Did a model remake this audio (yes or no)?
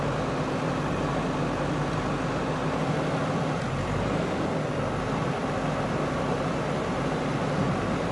no